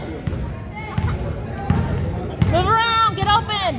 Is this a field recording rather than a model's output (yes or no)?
yes